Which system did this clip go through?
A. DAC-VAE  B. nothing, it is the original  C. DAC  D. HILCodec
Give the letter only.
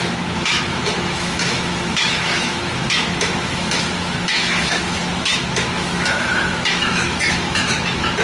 A